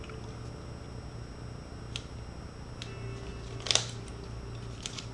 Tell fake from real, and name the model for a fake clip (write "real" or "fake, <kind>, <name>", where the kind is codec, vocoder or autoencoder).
real